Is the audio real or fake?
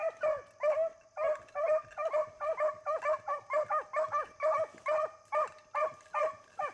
real